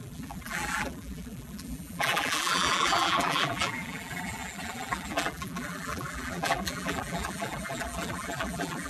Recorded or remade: remade